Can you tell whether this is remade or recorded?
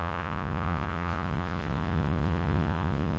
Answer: remade